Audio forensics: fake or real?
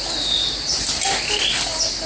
real